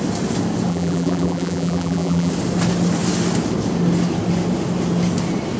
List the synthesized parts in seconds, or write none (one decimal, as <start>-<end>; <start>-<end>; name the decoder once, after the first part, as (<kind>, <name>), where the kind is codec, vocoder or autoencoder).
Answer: 0.7-2.3 (vocoder, BigVGAN v2)